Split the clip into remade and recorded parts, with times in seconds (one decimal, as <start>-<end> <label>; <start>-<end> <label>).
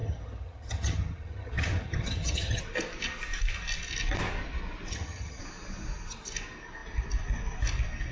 0.0-2.6 remade; 2.6-4.9 recorded; 4.9-5.4 remade; 5.4-8.1 recorded